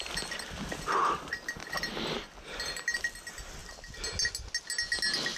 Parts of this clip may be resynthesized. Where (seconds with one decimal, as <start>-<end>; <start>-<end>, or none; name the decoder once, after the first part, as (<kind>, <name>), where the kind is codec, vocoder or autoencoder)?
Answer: none